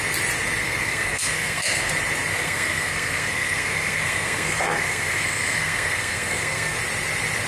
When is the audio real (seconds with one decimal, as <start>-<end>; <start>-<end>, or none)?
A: 0.0-0.6; 1.9-2.3; 6.8-7.5